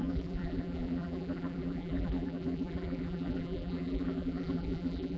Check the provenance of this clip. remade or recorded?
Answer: remade